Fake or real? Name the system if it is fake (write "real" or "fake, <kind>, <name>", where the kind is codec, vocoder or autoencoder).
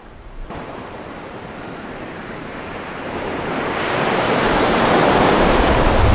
fake, vocoder, BigVGAN v2